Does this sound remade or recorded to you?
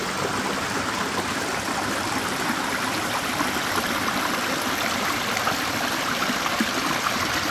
recorded